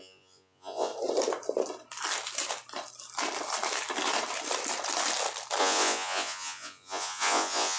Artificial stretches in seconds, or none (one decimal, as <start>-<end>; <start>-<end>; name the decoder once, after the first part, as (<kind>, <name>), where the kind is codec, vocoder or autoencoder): 0.0-0.9 (vocoder, Vocos); 5.6-7.8